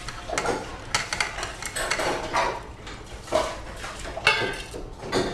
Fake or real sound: real